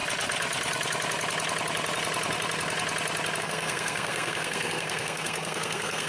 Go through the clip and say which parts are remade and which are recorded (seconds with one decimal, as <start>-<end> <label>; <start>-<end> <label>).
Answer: 0.0-3.4 recorded; 3.4-6.1 remade